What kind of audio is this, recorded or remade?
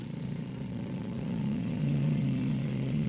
remade